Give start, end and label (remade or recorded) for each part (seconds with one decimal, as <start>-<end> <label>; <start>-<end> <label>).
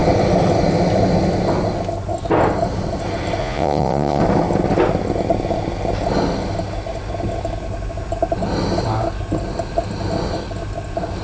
0.0-3.4 recorded; 3.4-4.2 remade; 4.2-11.2 recorded